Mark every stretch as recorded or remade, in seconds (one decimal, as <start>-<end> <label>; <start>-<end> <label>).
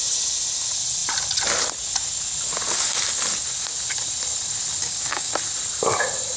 0.0-4.8 recorded; 4.8-5.3 remade; 5.3-6.4 recorded